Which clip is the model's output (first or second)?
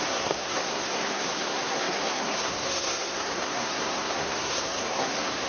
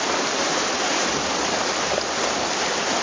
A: first